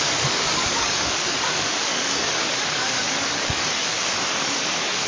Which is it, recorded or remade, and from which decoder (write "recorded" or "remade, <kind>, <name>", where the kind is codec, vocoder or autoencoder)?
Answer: remade, codec, DAC